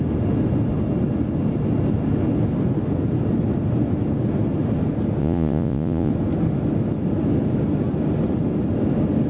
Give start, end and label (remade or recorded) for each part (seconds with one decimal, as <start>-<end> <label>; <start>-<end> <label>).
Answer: 0.0-5.2 recorded; 5.2-6.1 remade; 6.1-9.3 recorded